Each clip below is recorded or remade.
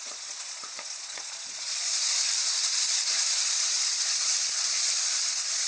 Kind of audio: remade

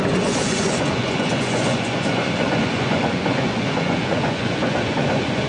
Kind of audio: remade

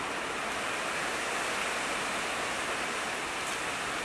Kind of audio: recorded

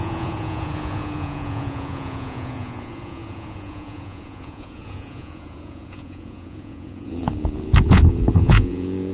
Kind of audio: remade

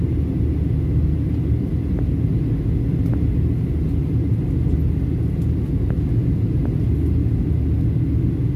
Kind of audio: recorded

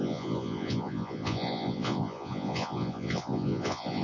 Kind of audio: remade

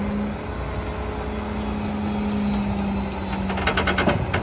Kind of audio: recorded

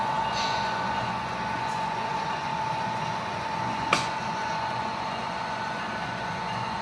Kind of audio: remade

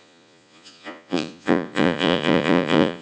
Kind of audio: remade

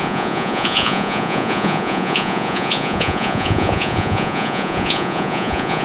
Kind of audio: remade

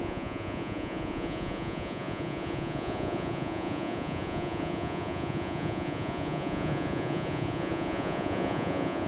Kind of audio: remade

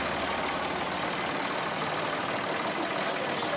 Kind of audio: recorded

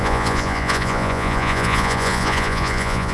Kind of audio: remade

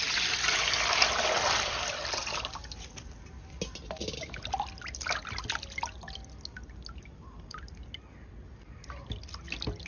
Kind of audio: recorded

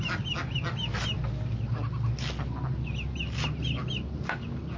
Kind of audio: recorded